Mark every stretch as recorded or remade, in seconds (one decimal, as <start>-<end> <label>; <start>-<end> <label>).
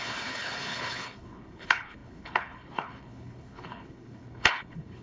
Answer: 0.0-5.0 remade